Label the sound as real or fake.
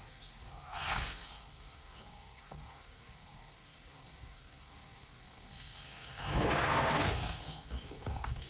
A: fake